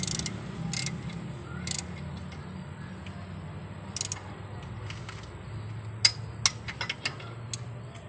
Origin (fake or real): real